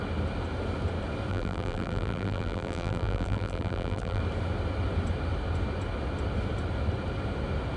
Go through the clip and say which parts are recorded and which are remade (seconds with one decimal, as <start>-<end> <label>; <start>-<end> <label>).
0.0-1.3 recorded; 1.3-4.2 remade; 4.2-7.8 recorded